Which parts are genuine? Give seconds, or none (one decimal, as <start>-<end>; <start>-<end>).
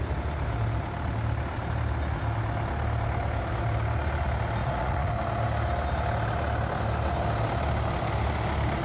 0.0-4.6; 5.1-8.8